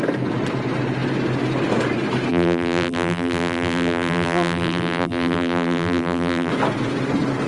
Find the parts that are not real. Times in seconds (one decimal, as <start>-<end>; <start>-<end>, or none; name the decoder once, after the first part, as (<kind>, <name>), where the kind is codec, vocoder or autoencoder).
2.3-6.5 (vocoder, BigVGAN v2)